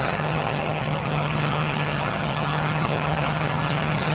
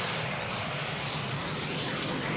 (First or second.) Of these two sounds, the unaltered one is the second